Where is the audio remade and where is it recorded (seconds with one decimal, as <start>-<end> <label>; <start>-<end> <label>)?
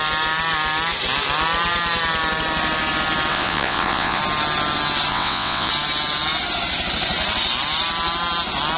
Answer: 0.0-3.3 recorded; 3.3-4.2 remade; 4.2-5.1 recorded; 5.1-5.7 remade; 5.7-8.8 recorded